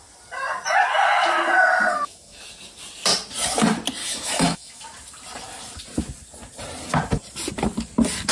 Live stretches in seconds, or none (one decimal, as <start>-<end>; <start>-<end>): 0.0-1.9; 2.4-4.0; 4.8-8.3